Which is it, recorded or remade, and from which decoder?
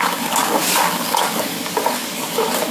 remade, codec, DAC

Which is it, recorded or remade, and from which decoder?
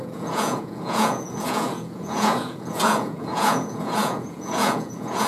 remade, vocoder, Vocos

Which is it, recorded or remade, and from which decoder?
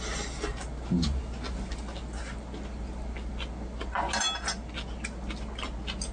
recorded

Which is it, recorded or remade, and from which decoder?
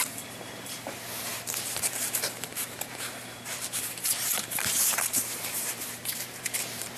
remade, vocoder, BigVGAN v2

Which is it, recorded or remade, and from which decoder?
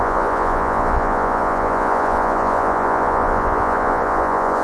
remade, vocoder, Vocos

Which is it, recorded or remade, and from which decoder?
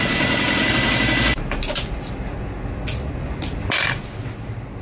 recorded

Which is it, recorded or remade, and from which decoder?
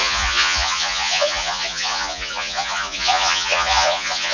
remade, vocoder, Vocos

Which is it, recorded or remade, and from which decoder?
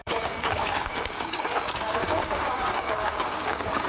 remade, codec, DAC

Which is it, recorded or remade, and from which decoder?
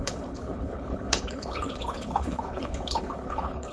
remade, codec, HILCodec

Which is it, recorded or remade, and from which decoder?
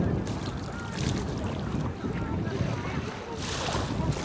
recorded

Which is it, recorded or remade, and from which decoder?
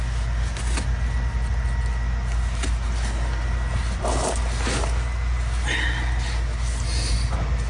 recorded